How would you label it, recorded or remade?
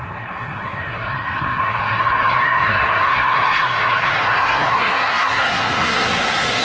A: remade